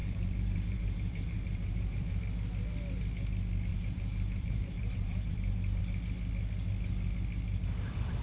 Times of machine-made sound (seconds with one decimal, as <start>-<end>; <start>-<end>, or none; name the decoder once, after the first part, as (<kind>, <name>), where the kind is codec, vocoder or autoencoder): 0.0-2.2 (vocoder, BigVGAN v2); 3.7-5.8